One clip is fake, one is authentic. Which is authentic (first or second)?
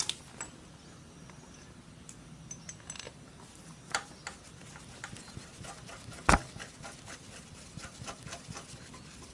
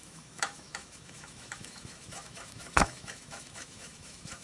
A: first